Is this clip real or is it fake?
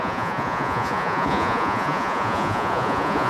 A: fake